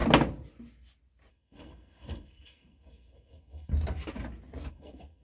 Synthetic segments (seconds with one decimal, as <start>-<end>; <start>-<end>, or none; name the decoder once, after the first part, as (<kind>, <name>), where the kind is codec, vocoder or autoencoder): 1.3-3.7 (codec, SNAC); 4.7-5.2